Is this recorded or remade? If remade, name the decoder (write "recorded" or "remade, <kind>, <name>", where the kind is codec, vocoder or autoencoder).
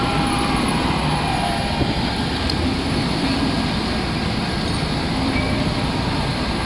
recorded